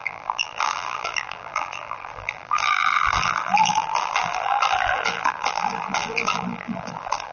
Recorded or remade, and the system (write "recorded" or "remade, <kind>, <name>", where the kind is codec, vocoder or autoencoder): remade, vocoder, BigVGAN v2